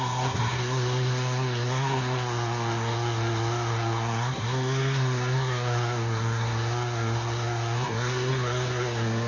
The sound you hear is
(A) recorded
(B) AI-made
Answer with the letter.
B